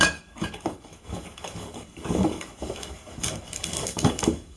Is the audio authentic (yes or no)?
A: no